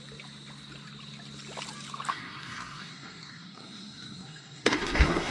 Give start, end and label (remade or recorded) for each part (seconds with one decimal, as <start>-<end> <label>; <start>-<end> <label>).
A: 0.0-2.1 recorded; 2.1-5.3 remade